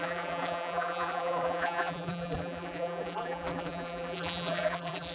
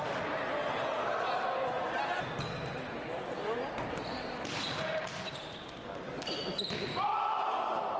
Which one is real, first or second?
second